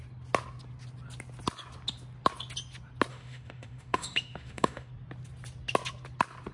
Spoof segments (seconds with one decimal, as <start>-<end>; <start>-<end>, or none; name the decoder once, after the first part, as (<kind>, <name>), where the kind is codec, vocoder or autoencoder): 3.1-4.9 (autoencoder, DAC-VAE)